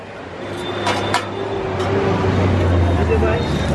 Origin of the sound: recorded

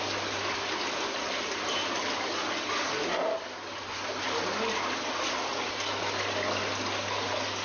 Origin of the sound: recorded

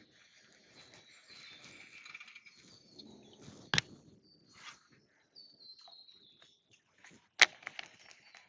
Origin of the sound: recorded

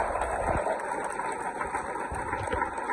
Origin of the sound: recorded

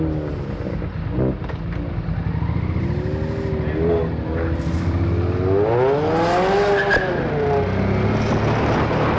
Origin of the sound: recorded